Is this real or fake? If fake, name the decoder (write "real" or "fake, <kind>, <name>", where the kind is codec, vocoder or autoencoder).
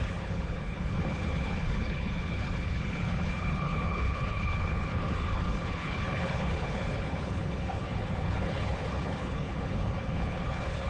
fake, codec, HILCodec